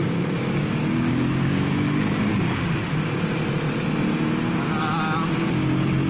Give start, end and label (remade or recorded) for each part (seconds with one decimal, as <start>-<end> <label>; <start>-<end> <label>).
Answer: 0.0-2.3 remade; 2.3-6.1 recorded